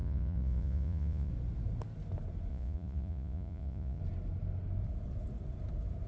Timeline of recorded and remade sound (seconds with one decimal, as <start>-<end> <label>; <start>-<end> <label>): 0.0-1.3 remade; 1.3-2.5 recorded; 2.5-4.0 remade; 4.0-6.1 recorded